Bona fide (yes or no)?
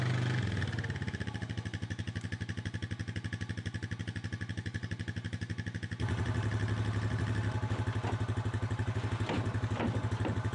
yes